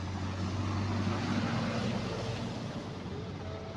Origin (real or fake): real